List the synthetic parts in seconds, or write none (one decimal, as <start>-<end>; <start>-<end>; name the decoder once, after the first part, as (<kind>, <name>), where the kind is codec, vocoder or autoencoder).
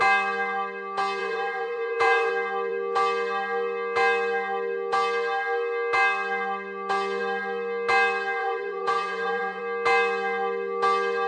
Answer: 1.2-2.3 (vocoder, Vocos); 8.4-9.6